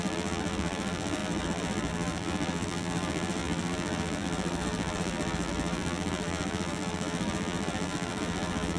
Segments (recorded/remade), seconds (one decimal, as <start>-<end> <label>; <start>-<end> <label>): 0.0-8.8 remade